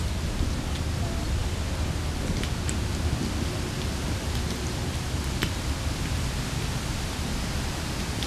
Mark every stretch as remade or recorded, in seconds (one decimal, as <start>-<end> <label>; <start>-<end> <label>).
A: 0.0-8.3 recorded